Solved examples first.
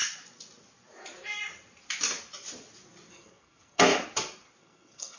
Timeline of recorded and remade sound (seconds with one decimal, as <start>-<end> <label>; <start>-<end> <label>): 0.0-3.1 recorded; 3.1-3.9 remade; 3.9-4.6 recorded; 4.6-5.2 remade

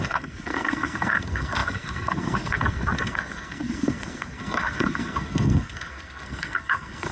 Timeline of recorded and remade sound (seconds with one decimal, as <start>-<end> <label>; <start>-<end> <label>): 0.0-7.1 remade

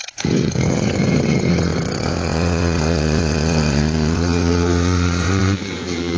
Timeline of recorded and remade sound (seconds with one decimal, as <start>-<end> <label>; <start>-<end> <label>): 0.0-6.2 remade